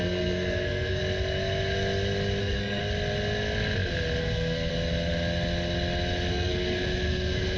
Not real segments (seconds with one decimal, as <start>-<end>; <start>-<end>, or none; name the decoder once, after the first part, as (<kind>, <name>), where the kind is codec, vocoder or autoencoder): 0.0-1.0 (codec, SNAC); 2.4-2.8; 4.2-4.7; 6.3-7.6